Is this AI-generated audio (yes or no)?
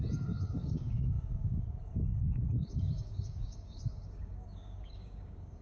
yes